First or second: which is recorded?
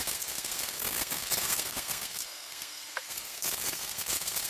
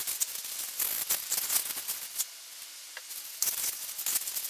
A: second